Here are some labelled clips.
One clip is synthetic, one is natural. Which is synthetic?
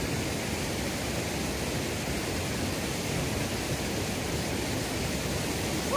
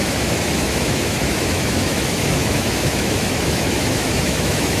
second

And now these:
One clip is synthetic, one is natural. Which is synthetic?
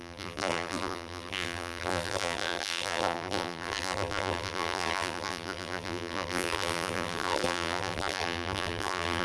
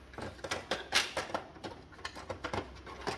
first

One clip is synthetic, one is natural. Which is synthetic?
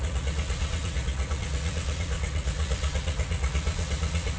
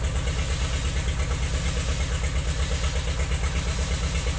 first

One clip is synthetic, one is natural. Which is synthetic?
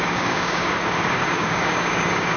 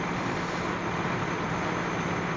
first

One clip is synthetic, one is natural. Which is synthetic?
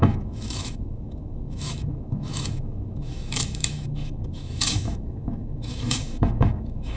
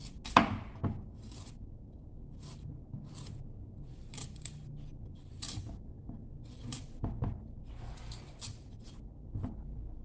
first